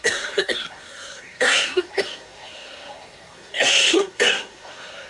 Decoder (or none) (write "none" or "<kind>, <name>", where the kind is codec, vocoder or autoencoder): codec, SNAC